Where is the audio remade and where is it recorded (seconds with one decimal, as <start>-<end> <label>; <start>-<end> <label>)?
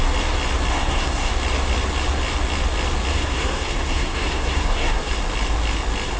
0.0-0.7 recorded; 0.7-1.3 remade; 1.3-3.1 recorded; 3.1-5.1 remade; 5.1-6.2 recorded